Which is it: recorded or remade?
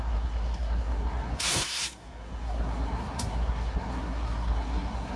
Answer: remade